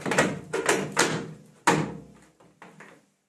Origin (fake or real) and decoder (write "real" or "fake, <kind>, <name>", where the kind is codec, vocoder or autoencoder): real